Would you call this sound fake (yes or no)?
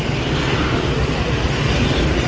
no